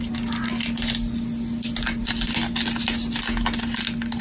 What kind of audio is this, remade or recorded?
recorded